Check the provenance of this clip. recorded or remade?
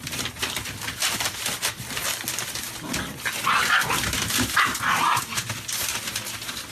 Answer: recorded